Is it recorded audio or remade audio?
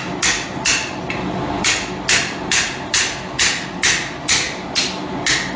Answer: recorded